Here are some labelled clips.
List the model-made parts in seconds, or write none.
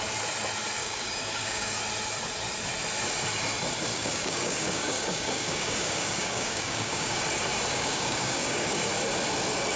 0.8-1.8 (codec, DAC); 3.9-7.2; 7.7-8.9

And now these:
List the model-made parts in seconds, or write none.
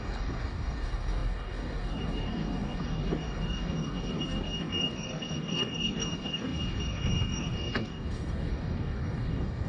0.0-9.7 (codec, DAC)